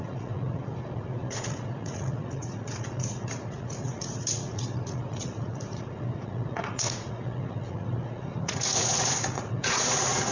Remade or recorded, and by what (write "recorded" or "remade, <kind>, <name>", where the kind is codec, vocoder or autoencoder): remade, vocoder, Vocos